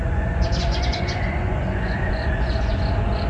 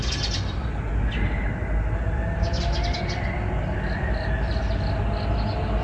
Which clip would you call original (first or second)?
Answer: second